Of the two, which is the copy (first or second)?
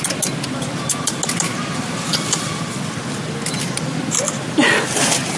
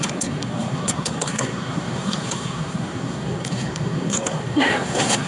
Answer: second